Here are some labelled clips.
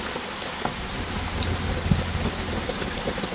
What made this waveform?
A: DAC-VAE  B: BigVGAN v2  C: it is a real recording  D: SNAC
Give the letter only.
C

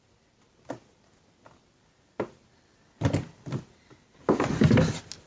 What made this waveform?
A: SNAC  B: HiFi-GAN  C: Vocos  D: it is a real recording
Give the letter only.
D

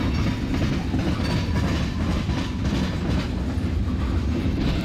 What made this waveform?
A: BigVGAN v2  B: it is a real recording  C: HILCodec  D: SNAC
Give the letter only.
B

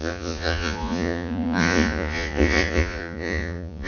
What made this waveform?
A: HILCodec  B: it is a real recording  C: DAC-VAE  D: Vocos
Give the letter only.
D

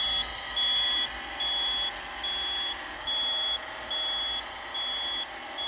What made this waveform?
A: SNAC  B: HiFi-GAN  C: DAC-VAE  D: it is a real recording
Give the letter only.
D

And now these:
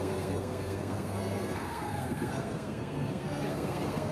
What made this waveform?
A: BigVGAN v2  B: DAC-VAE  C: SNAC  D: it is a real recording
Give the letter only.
C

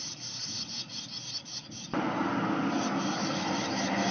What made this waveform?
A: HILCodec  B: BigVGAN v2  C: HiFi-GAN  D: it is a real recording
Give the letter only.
D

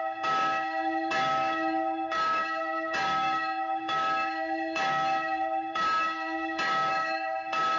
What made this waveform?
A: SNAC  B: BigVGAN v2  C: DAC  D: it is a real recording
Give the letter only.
C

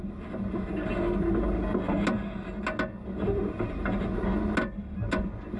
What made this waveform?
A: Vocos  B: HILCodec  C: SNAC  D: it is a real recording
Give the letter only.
D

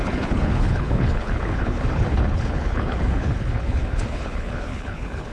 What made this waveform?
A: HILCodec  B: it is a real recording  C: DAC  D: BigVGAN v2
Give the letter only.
A